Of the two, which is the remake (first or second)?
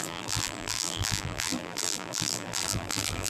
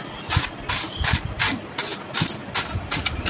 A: first